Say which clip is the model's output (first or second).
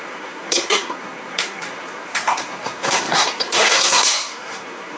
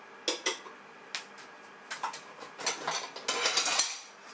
first